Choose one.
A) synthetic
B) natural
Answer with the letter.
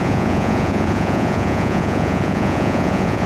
A